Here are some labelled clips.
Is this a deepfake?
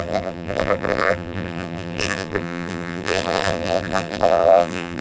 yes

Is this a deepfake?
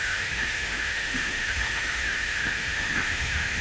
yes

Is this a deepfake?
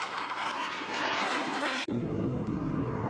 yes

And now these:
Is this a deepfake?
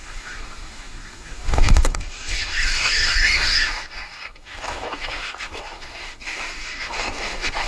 yes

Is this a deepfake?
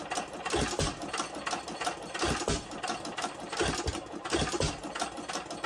no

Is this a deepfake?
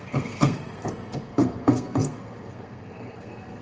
yes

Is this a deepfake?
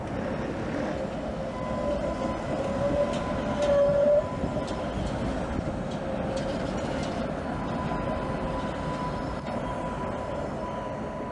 no